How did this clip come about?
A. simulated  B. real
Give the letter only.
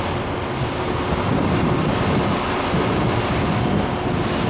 B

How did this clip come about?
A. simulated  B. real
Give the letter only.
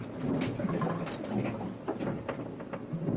B